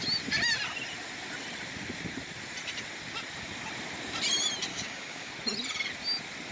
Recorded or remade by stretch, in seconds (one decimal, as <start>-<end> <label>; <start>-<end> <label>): 0.0-4.7 recorded; 4.7-5.3 remade; 5.3-6.5 recorded